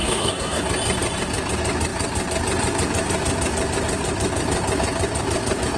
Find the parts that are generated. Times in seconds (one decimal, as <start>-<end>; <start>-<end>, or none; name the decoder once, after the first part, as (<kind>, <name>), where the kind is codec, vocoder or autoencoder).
0.0-0.6 (codec, SNAC)